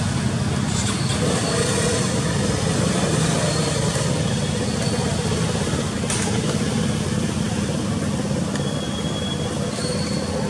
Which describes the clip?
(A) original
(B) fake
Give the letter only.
A